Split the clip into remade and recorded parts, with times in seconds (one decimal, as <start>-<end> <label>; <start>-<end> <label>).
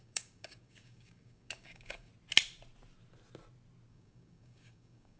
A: 0.0-2.1 remade; 2.1-3.9 recorded; 3.9-5.2 remade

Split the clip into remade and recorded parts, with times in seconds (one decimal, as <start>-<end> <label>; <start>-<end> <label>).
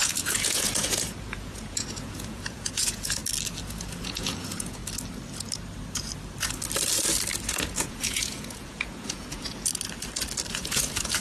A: 0.0-3.2 remade; 3.2-3.7 recorded; 3.7-4.8 remade; 4.8-7.5 recorded; 7.5-9.7 remade; 9.7-10.5 recorded; 10.5-11.2 remade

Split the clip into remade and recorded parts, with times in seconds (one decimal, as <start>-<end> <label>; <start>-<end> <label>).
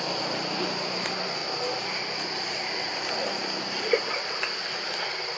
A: 0.0-5.4 recorded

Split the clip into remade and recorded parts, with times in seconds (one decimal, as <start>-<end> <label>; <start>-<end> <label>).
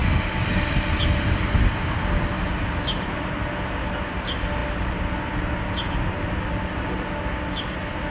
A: 0.0-8.1 recorded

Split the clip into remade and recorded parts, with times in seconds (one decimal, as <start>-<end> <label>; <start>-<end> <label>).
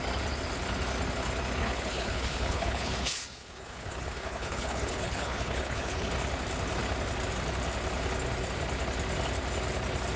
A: 0.0-1.6 recorded; 1.6-6.1 remade; 6.1-10.2 recorded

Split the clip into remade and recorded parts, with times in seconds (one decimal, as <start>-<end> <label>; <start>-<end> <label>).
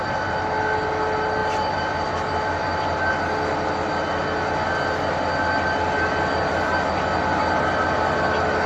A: 0.0-8.7 recorded